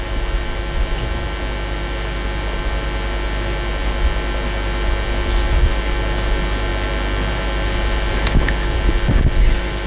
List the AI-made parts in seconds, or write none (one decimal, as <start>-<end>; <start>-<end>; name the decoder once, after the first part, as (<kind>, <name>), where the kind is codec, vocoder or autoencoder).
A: none

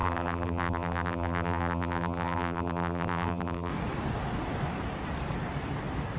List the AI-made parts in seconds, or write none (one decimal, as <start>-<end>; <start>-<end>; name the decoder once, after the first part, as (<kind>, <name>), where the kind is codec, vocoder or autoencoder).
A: 0.0-3.7 (vocoder, BigVGAN v2)

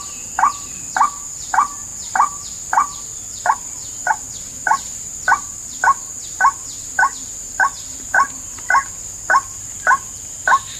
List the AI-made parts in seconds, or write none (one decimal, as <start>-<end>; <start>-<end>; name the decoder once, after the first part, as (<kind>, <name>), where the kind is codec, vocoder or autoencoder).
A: none